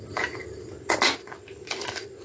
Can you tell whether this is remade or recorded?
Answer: remade